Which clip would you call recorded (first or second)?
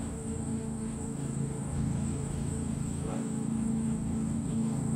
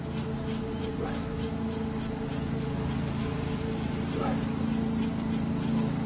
second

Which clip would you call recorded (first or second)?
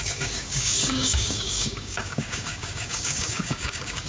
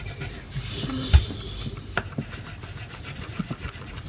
second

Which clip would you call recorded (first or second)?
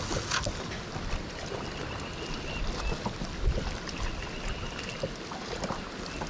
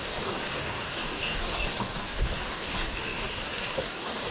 first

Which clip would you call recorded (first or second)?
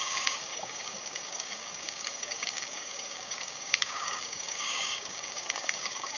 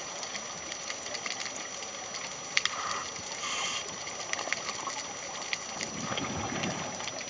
second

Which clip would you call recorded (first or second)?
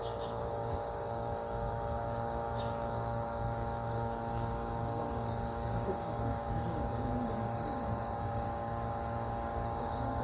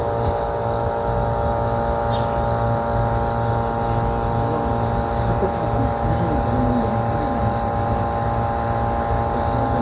second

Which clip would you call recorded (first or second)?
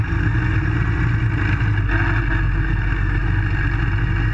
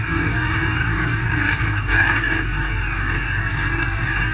first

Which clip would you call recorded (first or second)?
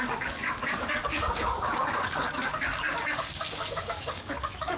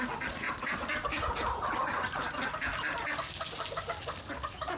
second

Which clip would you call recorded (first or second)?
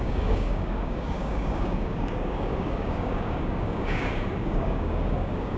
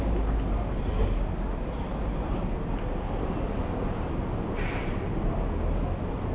second